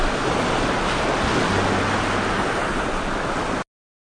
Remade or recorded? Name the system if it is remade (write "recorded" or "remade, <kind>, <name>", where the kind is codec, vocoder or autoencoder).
recorded